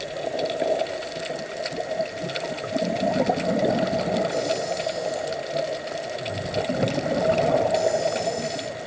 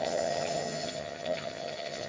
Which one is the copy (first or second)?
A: second